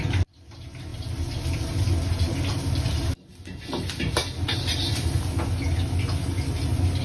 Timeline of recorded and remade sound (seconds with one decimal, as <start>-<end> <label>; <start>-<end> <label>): 0.0-7.0 recorded